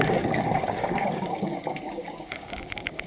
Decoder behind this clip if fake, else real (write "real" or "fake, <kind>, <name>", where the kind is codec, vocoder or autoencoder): fake, codec, DAC